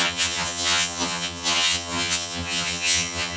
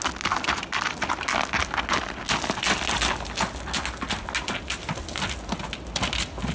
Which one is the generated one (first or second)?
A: first